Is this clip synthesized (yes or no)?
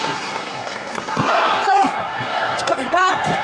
yes